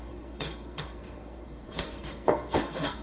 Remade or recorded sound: remade